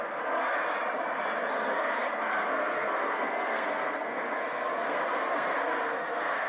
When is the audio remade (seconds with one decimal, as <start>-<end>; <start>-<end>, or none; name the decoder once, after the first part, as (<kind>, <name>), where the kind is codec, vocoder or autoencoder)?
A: 0.0-0.6 (codec, SNAC); 1.5-6.5